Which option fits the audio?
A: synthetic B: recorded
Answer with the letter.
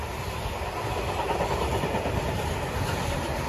B